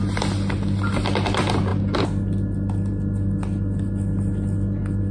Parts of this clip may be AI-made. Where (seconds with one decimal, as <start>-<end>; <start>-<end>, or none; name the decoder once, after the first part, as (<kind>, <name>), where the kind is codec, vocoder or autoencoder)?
none